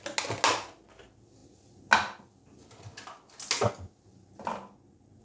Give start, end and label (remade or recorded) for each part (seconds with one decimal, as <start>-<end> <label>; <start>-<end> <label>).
0.0-5.2 recorded